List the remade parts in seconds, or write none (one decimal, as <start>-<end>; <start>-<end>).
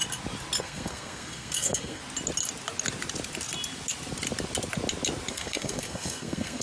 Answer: 0.6-2.0; 5.3-6.6